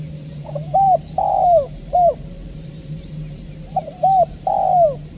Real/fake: fake